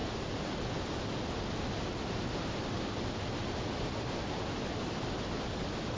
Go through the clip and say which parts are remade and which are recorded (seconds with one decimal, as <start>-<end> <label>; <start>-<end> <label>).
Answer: 0.0-6.0 recorded